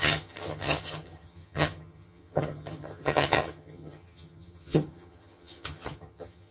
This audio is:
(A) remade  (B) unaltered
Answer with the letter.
A